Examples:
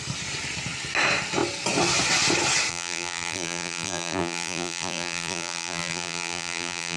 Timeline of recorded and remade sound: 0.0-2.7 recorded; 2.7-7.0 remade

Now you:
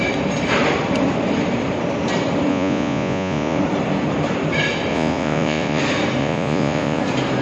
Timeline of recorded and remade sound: 0.0-2.5 recorded; 2.5-3.6 remade; 3.6-4.9 recorded; 4.9-5.8 remade; 5.8-6.2 recorded; 6.2-7.0 remade; 7.0-7.4 recorded